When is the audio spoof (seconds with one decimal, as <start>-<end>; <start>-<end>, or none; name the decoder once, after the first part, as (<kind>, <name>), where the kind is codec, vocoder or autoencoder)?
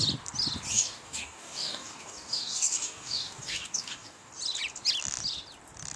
0.7-4.3 (codec, DAC)